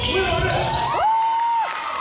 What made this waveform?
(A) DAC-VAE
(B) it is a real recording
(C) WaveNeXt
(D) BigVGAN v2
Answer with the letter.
B